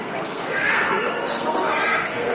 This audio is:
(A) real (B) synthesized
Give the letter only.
B